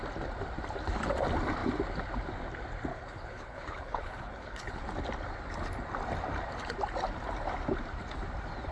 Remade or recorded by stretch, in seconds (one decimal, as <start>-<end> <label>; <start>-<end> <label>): 0.0-2.9 recorded; 2.9-4.8 remade; 4.8-8.7 recorded